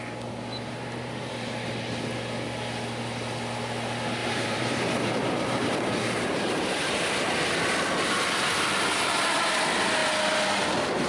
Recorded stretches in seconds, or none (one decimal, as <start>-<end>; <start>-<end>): 0.0-0.5; 1.3-4.2; 7.1-11.1